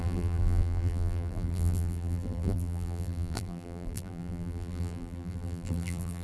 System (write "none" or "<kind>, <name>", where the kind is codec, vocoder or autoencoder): vocoder, BigVGAN v2